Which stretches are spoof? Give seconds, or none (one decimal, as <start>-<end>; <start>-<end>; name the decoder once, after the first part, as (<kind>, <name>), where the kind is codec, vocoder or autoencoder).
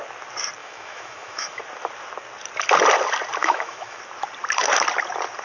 0.6-1.6 (autoencoder, DAC-VAE); 3.4-4.0